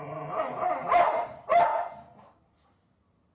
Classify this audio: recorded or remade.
recorded